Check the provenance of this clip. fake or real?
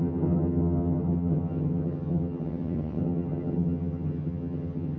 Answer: fake